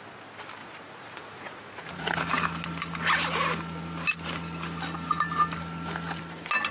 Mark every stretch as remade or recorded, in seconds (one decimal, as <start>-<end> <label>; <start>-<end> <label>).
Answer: 0.0-0.6 recorded; 0.6-2.1 remade; 2.1-6.7 recorded